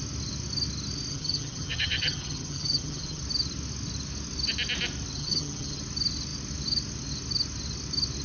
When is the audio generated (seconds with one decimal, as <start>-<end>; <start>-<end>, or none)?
1.1-3.2; 5.2-5.8

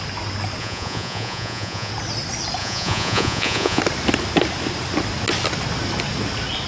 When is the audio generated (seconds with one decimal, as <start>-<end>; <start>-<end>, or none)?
0.6-1.9; 2.6-3.8

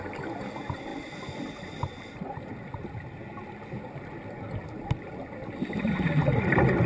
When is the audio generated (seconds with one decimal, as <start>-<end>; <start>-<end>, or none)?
none

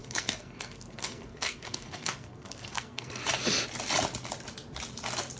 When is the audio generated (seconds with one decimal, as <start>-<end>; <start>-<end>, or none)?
0.0-3.2

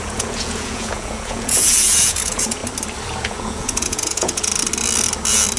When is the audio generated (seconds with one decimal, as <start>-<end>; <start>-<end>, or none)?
0.0-2.6; 3.2-4.5

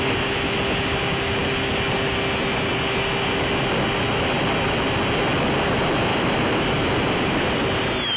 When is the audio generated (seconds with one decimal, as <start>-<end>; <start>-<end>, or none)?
6.1-7.6